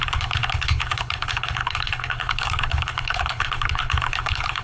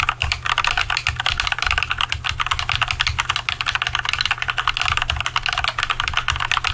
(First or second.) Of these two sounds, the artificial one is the first